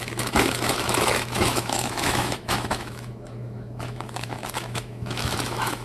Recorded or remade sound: remade